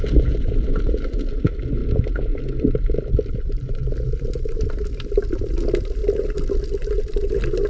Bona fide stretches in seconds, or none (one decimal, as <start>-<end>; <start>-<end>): 0.0-1.8; 5.5-6.0; 6.9-7.7